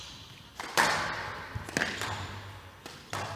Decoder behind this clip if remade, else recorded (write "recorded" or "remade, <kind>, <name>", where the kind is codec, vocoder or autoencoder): recorded